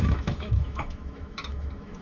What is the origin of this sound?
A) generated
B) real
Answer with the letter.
A